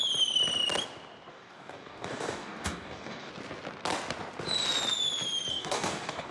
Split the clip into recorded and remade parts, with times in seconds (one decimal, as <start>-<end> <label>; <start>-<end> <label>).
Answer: 0.0-1.3 recorded; 1.3-3.3 remade; 3.3-5.5 recorded; 5.5-6.3 remade